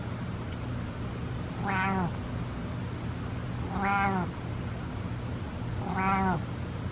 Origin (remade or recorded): recorded